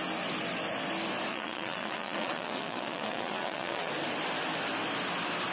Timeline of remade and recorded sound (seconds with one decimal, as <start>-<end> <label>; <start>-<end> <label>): 0.0-1.3 recorded; 1.3-3.9 remade; 3.9-5.5 recorded